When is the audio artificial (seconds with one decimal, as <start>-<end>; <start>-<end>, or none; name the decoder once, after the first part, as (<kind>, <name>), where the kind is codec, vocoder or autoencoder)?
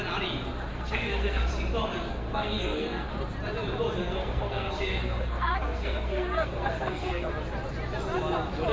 0.7-1.5 (codec, SNAC); 2.1-3.1; 4.0-7.3